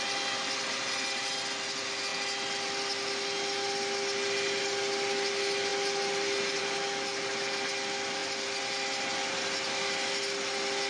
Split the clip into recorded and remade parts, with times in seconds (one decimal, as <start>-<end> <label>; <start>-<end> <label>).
0.0-10.9 recorded